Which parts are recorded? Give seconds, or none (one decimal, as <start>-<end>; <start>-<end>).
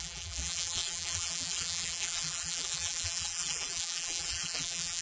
none